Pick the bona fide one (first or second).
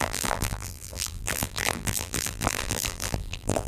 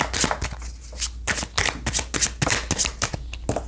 second